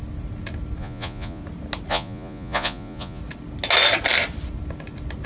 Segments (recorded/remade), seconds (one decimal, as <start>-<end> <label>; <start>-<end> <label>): 0.0-0.8 recorded; 0.8-1.4 remade; 1.4-1.9 recorded; 1.9-3.2 remade; 3.2-5.3 recorded

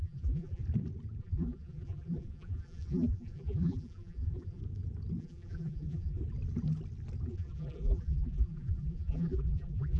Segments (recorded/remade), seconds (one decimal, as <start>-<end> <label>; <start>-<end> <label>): 0.0-0.6 remade; 0.6-1.2 recorded; 1.2-4.6 remade; 4.6-5.2 recorded; 5.2-6.2 remade; 6.2-7.3 recorded; 7.3-10.0 remade